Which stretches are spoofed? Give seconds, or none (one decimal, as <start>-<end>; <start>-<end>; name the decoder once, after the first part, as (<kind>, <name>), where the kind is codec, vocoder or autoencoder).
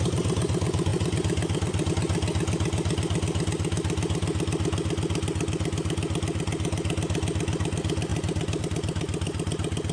0.9-1.9 (vocoder, BigVGAN v2); 8.1-8.6